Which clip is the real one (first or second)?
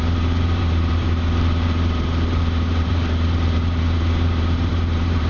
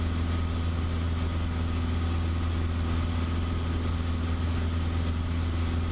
second